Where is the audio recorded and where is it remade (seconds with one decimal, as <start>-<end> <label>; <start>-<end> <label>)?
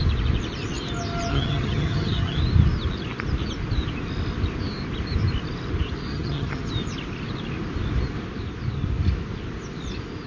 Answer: 0.0-1.3 recorded; 1.3-2.4 remade; 2.4-6.1 recorded; 6.1-6.7 remade; 6.7-10.3 recorded